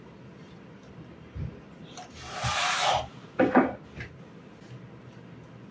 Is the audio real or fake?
real